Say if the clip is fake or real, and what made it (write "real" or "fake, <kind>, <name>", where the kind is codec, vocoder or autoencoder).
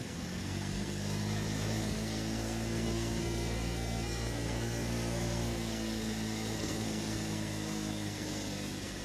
fake, codec, SNAC